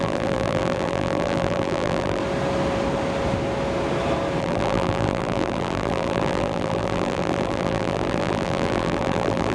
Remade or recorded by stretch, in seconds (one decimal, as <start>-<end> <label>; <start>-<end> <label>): 0.0-2.2 remade; 2.2-4.4 recorded; 4.4-9.5 remade